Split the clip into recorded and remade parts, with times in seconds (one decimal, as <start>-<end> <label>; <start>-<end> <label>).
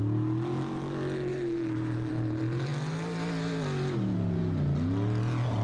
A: 0.0-1.3 recorded; 1.3-2.1 remade; 2.1-5.6 recorded